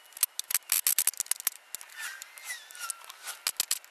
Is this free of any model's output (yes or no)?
yes